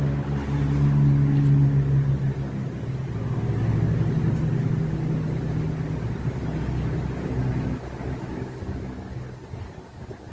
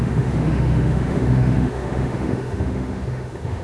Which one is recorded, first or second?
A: first